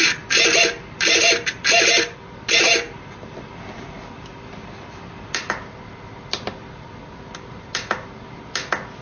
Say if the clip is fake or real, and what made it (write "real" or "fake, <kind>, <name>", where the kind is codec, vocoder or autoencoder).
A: real